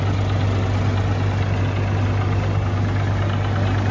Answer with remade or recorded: recorded